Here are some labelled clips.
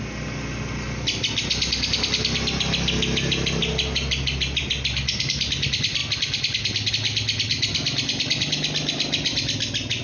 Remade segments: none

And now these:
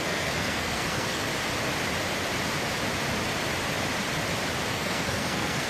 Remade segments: 0.0-1.3 (codec, SNAC); 4.7-5.7

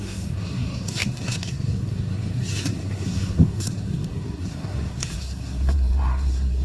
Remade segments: 0.0-6.6 (codec, SNAC)

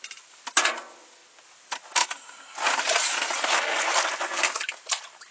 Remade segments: none

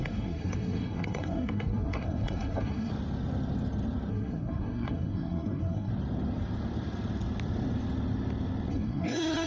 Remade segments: 0.0-2.9 (codec, SNAC); 4.1-5.9; 8.7-9.5